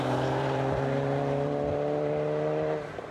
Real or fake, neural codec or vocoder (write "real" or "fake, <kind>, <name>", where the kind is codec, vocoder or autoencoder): fake, vocoder, BigVGAN v2